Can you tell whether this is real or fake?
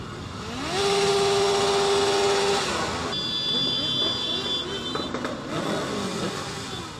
real